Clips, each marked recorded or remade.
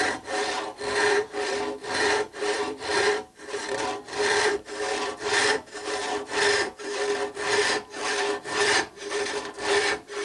remade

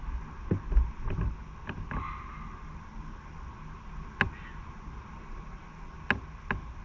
recorded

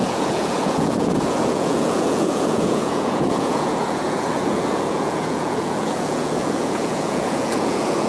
remade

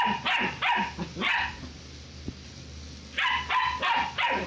recorded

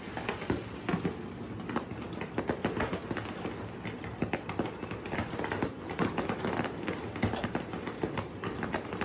recorded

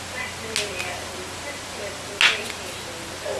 recorded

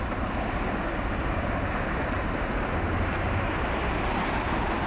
recorded